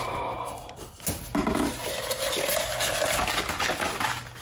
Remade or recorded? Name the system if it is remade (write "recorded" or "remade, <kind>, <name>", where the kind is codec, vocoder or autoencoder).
recorded